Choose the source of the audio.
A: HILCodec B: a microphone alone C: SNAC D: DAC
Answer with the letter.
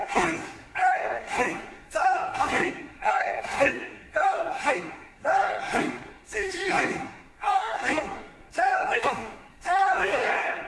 C